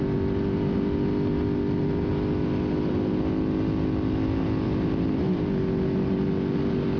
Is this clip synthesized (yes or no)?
no